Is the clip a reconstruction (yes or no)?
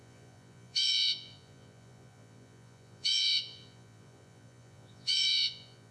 yes